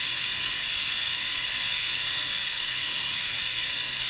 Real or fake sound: fake